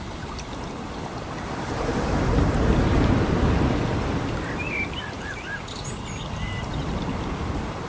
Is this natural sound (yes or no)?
yes